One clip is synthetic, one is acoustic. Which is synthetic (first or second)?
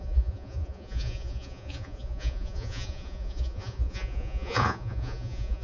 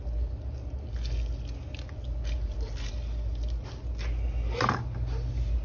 first